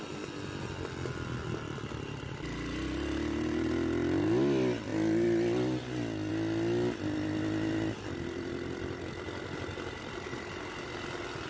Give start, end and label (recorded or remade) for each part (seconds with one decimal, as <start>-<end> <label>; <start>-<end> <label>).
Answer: 0.0-11.5 recorded

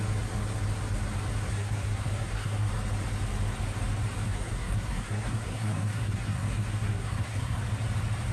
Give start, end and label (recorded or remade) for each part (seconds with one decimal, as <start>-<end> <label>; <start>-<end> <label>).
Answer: 0.0-1.5 recorded; 1.5-2.7 remade; 2.7-4.3 recorded; 4.3-7.6 remade; 7.6-8.3 recorded

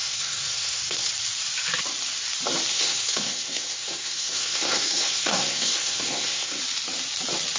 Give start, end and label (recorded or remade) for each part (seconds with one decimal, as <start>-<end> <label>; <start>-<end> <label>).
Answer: 0.0-1.1 remade; 1.1-2.7 recorded; 2.7-6.6 remade; 6.6-7.6 recorded